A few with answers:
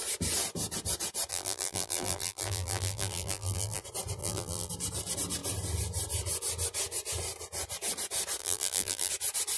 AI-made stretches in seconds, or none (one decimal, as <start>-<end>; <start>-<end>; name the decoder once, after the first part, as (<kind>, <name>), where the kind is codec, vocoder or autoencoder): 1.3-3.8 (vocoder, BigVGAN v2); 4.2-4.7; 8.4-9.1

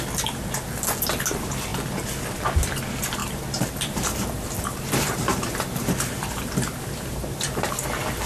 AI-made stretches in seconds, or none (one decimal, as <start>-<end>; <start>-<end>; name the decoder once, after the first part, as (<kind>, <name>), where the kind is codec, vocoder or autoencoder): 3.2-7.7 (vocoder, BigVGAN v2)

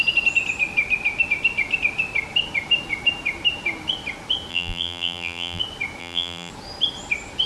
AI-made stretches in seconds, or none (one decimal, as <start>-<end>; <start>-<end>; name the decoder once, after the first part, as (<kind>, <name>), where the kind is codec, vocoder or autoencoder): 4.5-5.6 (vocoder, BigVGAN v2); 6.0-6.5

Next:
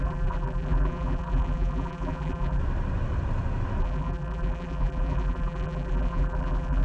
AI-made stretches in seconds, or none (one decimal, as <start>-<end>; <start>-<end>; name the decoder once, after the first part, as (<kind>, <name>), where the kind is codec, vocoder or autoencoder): 0.0-2.6 (vocoder, BigVGAN v2); 3.8-6.8